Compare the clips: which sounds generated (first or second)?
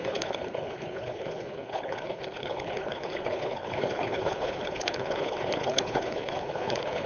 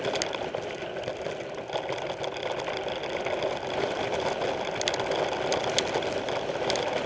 first